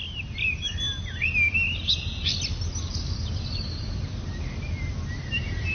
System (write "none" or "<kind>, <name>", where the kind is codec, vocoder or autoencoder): none